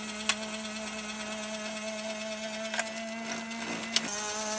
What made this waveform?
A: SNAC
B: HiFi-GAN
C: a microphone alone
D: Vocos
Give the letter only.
C